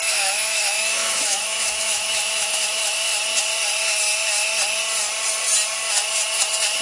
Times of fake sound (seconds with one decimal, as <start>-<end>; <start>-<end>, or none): 0.0-3.1